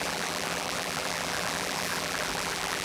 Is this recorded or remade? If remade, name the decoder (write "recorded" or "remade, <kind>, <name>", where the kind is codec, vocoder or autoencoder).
remade, vocoder, BigVGAN v2